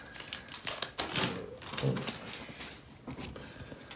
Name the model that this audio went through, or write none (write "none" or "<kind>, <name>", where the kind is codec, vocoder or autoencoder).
none